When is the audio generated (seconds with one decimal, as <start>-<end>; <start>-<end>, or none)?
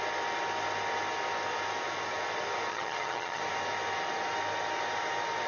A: 2.7-3.4